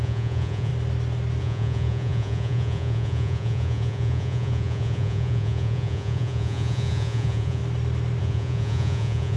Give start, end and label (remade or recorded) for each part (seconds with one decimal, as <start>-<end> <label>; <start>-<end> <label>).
0.0-0.7 remade; 0.7-1.4 recorded; 1.4-7.6 remade; 7.6-8.2 recorded; 8.2-9.4 remade